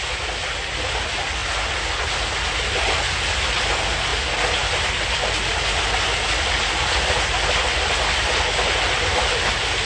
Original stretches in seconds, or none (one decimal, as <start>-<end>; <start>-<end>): 0.0-9.9